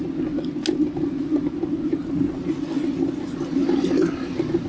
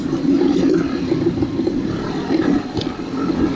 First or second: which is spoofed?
second